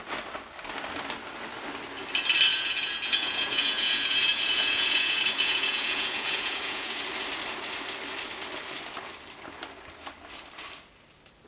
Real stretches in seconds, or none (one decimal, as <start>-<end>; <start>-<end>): 0.0-2.5; 7.0-11.5